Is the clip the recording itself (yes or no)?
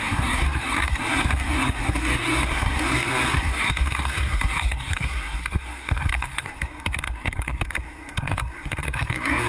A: no